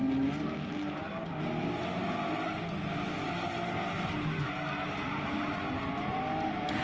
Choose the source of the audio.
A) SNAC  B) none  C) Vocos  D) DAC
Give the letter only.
B